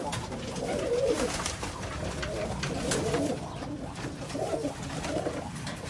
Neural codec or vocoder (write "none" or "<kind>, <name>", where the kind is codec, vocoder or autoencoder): vocoder, BigVGAN v2